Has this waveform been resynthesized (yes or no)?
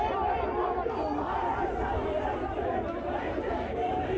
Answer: yes